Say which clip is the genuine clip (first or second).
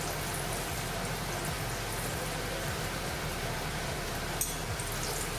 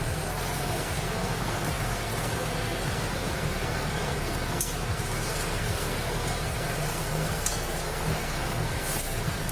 first